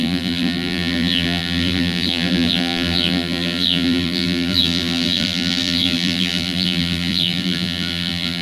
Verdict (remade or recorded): remade